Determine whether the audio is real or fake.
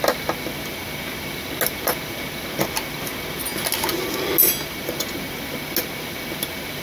real